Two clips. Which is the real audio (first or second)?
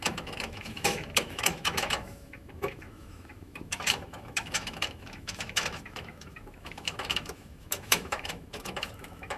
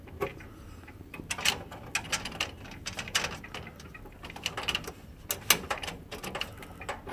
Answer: second